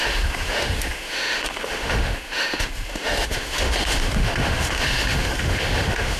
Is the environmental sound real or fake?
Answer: fake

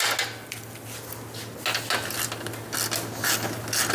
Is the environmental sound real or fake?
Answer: real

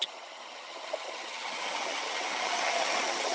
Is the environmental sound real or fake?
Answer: fake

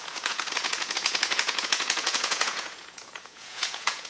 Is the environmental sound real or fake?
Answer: fake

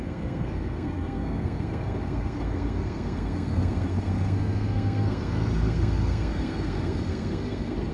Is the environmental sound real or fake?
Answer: fake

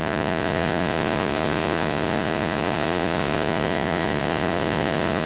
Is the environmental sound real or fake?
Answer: fake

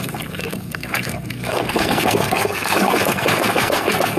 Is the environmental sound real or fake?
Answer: fake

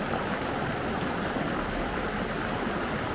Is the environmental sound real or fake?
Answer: real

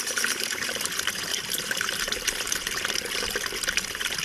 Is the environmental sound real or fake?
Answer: fake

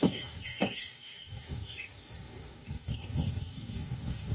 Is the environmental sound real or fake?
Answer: fake